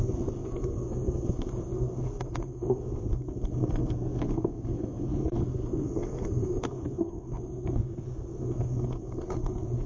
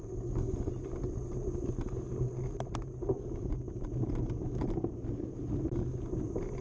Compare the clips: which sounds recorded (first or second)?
second